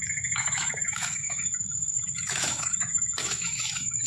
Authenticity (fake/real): fake